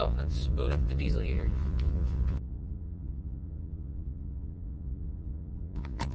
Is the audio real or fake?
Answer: fake